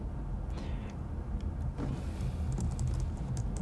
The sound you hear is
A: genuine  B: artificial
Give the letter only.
A